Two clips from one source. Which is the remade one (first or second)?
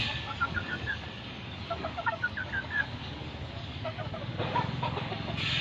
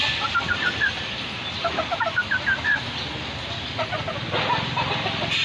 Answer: first